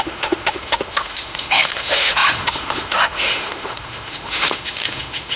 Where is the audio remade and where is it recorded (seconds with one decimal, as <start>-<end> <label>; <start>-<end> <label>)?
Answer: 0.0-5.4 remade